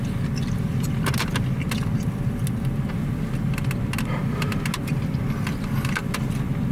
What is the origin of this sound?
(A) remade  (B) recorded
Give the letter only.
B